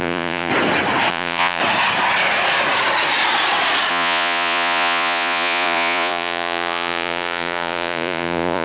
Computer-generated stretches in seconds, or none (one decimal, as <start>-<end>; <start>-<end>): 0.0-0.5; 1.1-1.6; 3.9-8.6